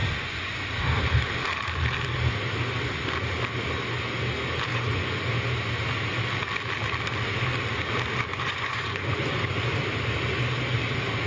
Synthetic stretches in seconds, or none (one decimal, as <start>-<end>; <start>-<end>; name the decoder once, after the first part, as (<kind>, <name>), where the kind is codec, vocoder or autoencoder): 0.0-0.7 (vocoder, Vocos); 4.7-5.3; 8.3-9.8